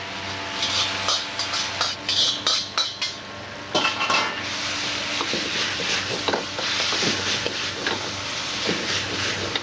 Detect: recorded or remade recorded